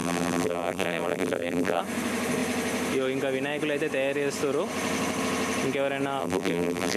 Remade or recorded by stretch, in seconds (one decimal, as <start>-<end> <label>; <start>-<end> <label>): 0.0-1.8 remade; 1.8-6.2 recorded; 6.2-7.0 remade